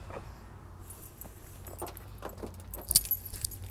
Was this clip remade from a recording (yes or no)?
no